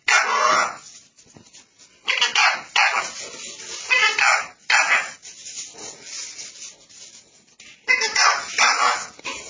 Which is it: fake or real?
real